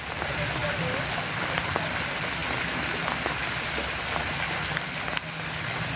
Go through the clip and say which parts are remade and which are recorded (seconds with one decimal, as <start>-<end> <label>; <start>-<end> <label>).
0.0-6.0 recorded